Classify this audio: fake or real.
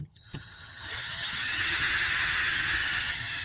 fake